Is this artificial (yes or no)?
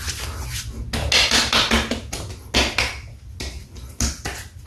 no